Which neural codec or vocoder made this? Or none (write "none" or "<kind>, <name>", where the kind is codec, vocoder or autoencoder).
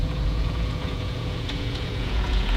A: vocoder, Vocos